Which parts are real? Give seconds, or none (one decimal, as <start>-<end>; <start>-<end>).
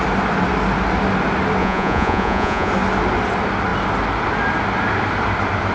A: 0.0-1.6; 2.7-5.7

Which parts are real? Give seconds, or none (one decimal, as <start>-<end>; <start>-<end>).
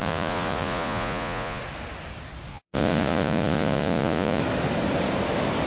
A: 1.6-2.5; 4.4-5.7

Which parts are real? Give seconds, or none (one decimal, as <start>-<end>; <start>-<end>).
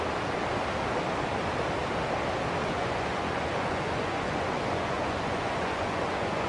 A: 0.0-2.6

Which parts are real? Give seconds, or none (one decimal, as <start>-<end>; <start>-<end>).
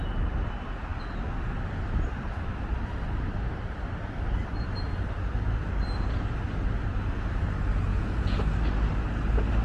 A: 0.0-7.9; 8.4-9.6